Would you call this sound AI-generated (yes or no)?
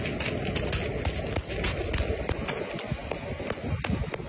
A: no